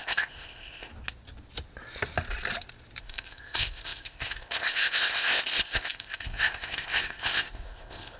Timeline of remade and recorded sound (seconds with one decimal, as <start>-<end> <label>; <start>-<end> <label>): 0.0-0.9 remade; 0.9-3.0 recorded; 3.0-8.2 remade